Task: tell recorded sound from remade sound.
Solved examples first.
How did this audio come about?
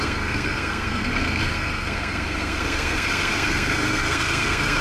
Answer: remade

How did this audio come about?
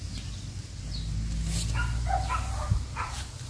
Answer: recorded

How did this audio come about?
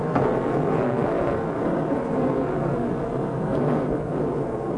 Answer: remade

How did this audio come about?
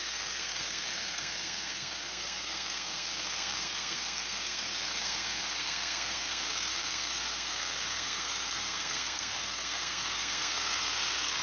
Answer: remade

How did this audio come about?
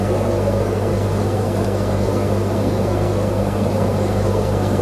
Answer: remade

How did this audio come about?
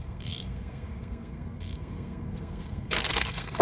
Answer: remade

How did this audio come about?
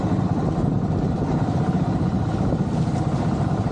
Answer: recorded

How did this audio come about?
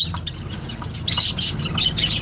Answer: recorded